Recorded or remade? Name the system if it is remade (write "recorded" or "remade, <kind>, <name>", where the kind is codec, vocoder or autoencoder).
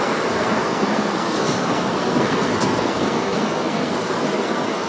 remade, codec, SNAC